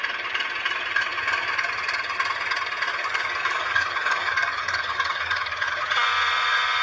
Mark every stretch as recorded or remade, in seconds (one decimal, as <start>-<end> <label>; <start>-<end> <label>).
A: 0.0-2.9 recorded; 2.9-5.8 remade; 5.8-6.8 recorded